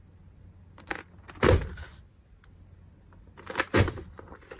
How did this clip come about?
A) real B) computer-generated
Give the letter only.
A